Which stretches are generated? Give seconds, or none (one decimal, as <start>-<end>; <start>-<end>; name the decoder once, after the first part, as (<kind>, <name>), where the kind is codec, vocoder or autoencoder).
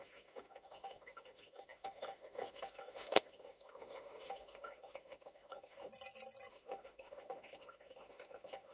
0.0-5.9 (autoencoder, DAC-VAE); 6.5-8.7